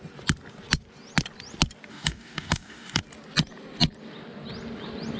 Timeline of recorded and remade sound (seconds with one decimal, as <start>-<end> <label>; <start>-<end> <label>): 0.0-1.9 recorded; 1.9-3.0 remade; 3.0-5.2 recorded